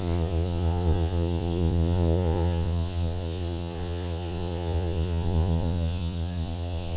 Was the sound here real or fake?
fake